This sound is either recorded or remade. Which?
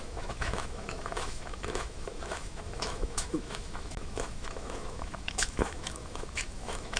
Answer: remade